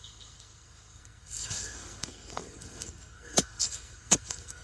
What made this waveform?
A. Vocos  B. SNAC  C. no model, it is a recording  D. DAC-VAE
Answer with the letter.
B